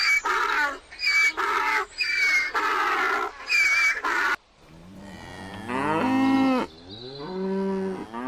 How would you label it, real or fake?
real